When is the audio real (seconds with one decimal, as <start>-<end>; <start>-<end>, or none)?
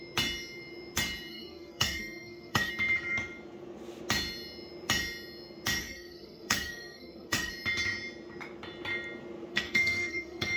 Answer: 0.0-1.3; 2.7-5.8; 7.5-9.5